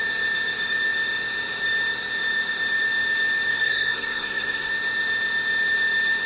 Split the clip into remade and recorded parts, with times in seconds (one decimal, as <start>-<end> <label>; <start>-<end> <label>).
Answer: 0.0-3.5 recorded; 3.5-4.7 remade; 4.7-6.3 recorded